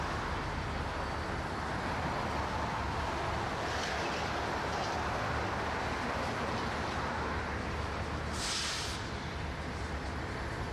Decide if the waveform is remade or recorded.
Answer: recorded